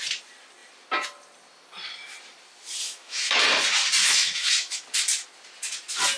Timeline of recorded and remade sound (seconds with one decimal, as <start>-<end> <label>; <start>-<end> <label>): 0.0-2.8 recorded; 2.8-3.4 remade; 3.4-4.0 recorded; 4.0-4.8 remade; 4.8-6.2 recorded